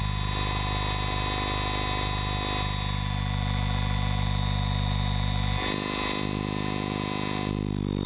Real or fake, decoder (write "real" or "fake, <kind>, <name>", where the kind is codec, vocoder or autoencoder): real